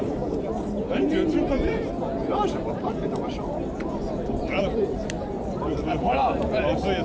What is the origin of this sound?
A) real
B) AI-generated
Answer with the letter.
B